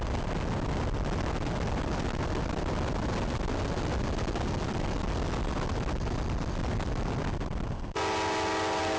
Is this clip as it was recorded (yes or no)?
yes